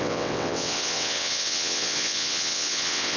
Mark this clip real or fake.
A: fake